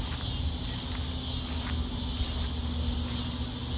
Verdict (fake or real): real